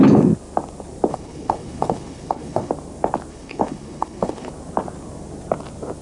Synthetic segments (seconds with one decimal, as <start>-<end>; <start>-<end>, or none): 1.1-2.7; 3.3-4.5